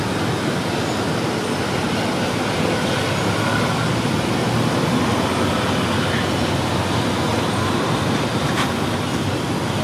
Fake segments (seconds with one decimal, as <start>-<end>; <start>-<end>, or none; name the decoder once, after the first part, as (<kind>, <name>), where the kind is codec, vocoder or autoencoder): 7.3-8.1 (vocoder, BigVGAN v2)